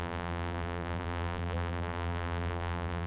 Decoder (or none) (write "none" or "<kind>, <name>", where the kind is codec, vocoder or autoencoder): vocoder, BigVGAN v2